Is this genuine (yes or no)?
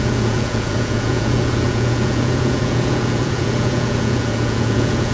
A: no